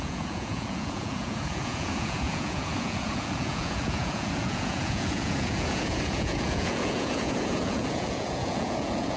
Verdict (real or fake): fake